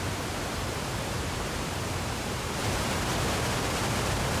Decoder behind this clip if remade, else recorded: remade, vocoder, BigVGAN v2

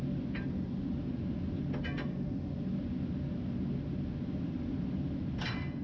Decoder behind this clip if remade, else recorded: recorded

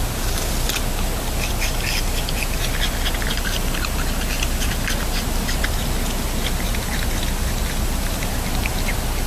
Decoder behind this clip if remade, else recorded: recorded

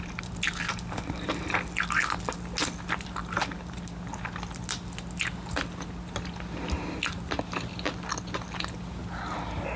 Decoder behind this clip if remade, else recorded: recorded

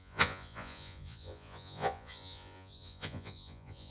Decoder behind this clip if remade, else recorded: remade, vocoder, Vocos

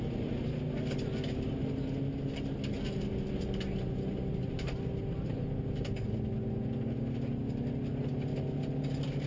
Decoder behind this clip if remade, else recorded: recorded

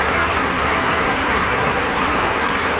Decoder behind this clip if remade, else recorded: remade, codec, SNAC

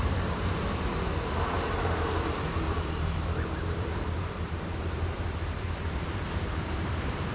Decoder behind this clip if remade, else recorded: remade, vocoder, BigVGAN v2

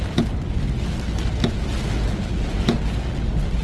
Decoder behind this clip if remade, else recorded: recorded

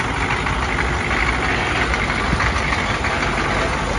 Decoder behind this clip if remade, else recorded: recorded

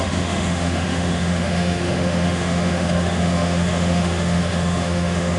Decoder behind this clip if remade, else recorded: remade, autoencoder, DAC-VAE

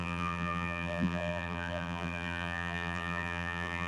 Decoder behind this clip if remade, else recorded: remade, vocoder, BigVGAN v2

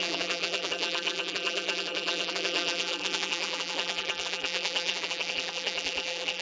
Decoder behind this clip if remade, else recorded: remade, vocoder, BigVGAN v2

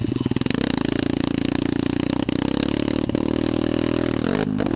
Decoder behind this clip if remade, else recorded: recorded